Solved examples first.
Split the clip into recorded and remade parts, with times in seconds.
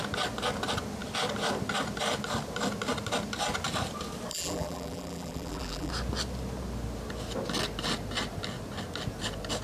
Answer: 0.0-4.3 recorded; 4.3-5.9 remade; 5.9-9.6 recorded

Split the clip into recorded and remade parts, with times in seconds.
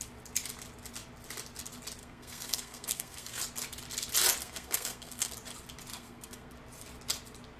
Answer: 0.0-2.0 recorded; 2.0-3.4 remade; 3.4-4.4 recorded; 4.4-5.3 remade; 5.3-5.9 recorded; 5.9-6.5 remade; 6.5-7.6 recorded